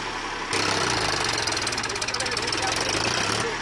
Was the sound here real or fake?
real